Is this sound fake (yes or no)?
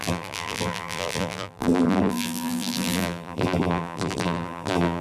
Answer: yes